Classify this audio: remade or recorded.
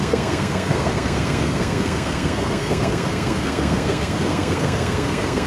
remade